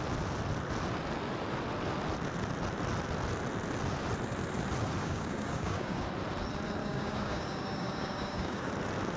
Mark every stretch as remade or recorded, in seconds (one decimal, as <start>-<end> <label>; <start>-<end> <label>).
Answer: 0.0-5.0 recorded; 5.0-6.1 remade; 6.1-6.8 recorded; 6.8-8.7 remade; 8.7-9.2 recorded